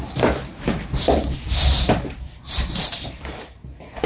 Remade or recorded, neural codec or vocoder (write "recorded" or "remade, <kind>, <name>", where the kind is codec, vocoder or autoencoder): remade, vocoder, BigVGAN v2